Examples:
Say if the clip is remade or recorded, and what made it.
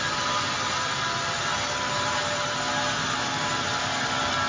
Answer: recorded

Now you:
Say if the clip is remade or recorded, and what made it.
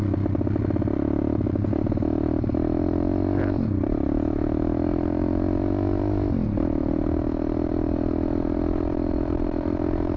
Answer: recorded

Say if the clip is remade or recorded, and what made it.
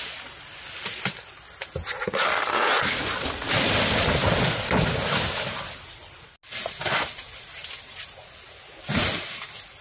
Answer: recorded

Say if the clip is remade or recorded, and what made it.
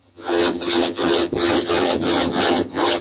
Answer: remade, vocoder, HiFi-GAN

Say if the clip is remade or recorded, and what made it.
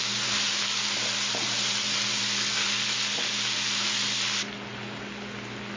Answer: recorded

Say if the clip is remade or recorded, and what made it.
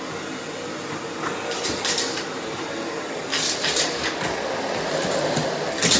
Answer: recorded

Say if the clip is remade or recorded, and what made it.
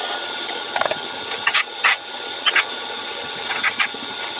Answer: remade, vocoder, HiFi-GAN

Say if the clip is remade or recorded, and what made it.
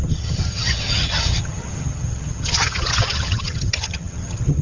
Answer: remade, vocoder, HiFi-GAN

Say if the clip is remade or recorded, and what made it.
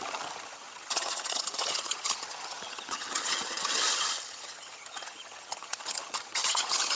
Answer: remade, vocoder, HiFi-GAN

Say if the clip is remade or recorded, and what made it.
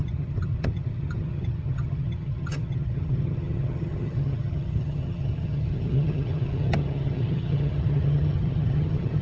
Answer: remade, vocoder, HiFi-GAN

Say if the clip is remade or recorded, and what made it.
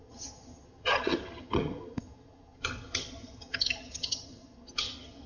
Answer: remade, vocoder, HiFi-GAN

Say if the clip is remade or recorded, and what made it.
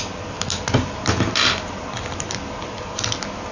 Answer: recorded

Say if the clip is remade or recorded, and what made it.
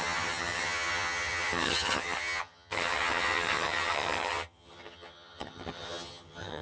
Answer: remade, vocoder, HiFi-GAN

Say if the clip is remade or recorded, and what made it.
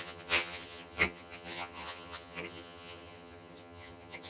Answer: remade, vocoder, HiFi-GAN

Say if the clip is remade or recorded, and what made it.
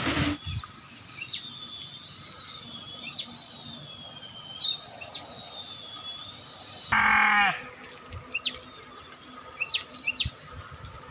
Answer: recorded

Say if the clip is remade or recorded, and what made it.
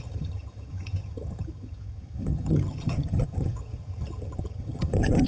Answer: remade, vocoder, HiFi-GAN